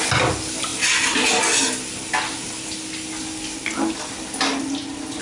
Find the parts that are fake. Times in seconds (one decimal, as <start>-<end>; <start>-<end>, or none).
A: none